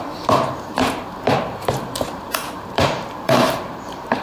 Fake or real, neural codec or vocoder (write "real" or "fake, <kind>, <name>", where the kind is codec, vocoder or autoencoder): fake, vocoder, BigVGAN v2